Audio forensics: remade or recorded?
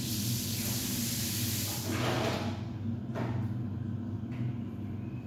recorded